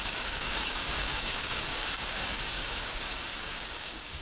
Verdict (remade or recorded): remade